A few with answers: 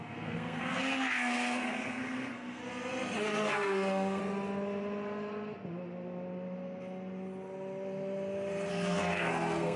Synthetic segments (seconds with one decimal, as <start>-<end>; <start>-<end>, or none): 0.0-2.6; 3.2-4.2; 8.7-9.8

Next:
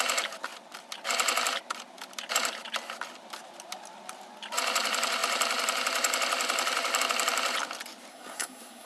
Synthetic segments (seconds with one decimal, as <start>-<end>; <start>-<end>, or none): 8.1-8.9

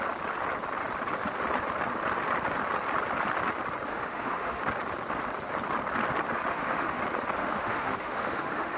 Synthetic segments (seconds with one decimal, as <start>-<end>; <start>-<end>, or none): 3.9-4.6; 6.5-7.0; 7.4-8.8

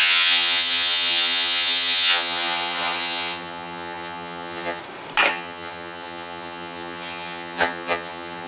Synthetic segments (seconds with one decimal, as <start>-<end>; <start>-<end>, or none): 0.0-4.8; 5.3-8.5

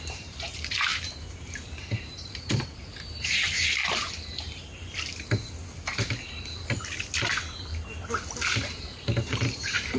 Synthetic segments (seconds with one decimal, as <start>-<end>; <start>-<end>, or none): 0.0-3.8; 8.8-10.0

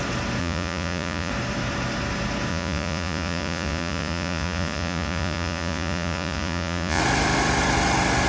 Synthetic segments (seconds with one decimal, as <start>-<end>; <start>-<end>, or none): 0.4-1.3; 2.5-7.0

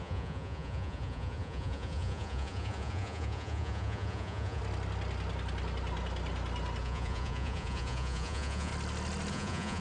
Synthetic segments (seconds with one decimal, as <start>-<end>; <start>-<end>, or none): 0.0-4.6; 6.8-8.7; 9.3-9.8